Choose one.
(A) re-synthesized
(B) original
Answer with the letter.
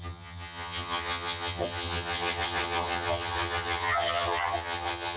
A